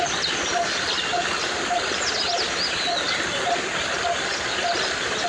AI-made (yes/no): no